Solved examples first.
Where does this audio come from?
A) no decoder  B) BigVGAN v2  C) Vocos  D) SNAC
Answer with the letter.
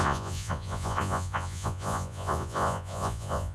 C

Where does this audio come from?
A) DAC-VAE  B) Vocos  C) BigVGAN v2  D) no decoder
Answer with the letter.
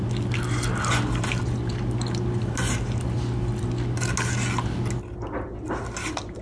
D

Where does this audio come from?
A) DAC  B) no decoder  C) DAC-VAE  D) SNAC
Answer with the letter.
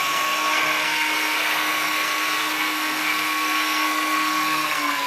D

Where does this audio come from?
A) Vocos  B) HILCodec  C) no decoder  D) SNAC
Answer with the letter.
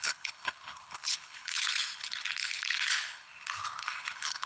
B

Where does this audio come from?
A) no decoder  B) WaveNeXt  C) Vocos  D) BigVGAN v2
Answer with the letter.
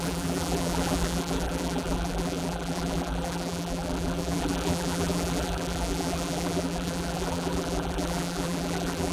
D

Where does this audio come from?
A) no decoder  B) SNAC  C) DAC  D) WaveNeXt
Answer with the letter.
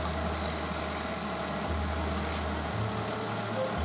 A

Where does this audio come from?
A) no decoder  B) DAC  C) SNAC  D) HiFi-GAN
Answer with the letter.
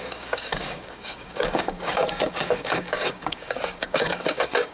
B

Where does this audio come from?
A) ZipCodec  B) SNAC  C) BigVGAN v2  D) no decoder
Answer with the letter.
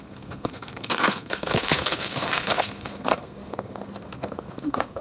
B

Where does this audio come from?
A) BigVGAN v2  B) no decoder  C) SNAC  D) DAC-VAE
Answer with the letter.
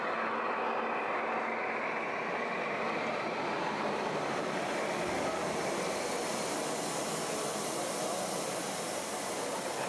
B